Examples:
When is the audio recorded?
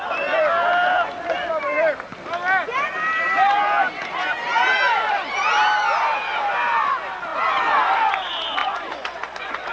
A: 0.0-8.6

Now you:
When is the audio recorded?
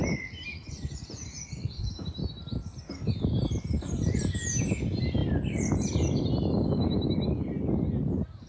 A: 0.0-0.5; 1.8-8.5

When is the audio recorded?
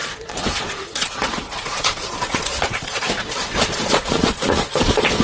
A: none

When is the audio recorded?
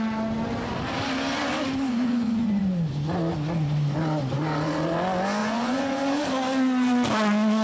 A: 0.0-2.0; 2.6-5.4; 6.2-7.6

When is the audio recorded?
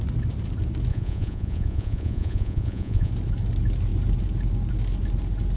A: 0.0-0.9; 3.1-5.6